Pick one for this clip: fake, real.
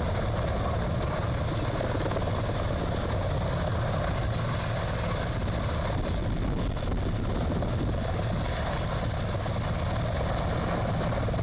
real